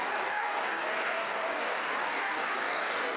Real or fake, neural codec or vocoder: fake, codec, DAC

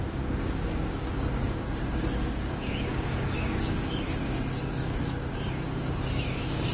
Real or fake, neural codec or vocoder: fake, codec, DAC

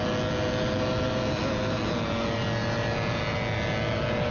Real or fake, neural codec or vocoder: real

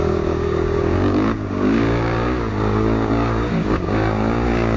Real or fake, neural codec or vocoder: fake, codec, DAC